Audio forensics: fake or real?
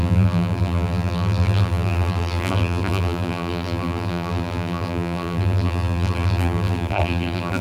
fake